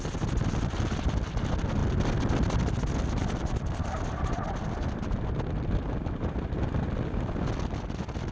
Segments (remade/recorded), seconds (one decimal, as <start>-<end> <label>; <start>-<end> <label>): 0.0-8.3 recorded